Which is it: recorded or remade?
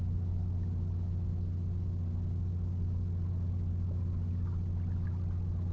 recorded